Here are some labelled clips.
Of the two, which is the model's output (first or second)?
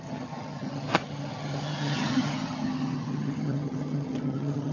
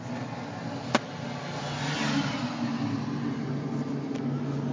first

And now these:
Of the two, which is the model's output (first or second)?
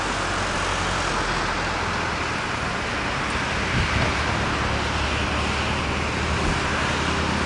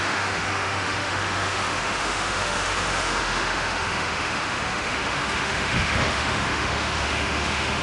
second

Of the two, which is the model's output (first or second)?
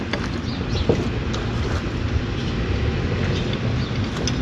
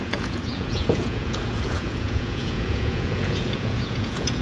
second